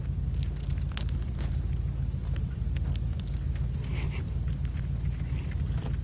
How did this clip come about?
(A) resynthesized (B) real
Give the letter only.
B